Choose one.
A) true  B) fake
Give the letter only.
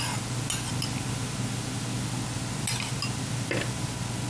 A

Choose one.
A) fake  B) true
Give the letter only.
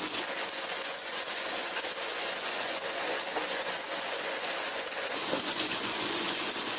A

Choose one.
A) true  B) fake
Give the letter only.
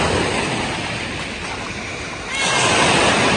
A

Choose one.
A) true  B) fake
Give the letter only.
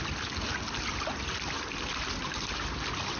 A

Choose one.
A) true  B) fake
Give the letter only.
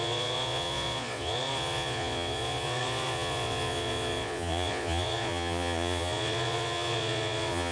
B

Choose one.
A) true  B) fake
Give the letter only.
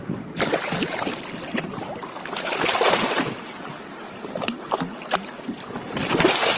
A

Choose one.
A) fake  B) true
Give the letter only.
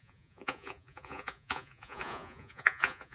A